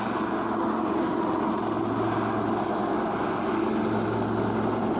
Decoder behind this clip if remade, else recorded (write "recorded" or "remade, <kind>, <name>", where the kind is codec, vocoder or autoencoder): recorded